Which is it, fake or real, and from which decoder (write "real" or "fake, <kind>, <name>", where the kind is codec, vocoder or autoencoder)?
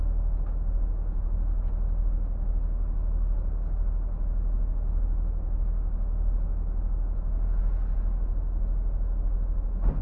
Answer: real